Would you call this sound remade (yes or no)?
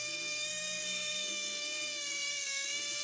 yes